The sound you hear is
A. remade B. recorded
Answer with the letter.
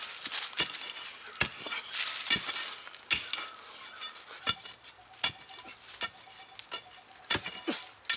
B